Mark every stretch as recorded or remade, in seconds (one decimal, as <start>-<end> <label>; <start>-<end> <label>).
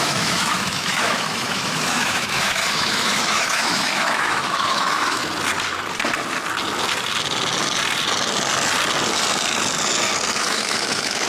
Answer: 0.0-5.2 remade; 5.2-10.3 recorded; 10.3-11.3 remade